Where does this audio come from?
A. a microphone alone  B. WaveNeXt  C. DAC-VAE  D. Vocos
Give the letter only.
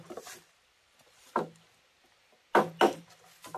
A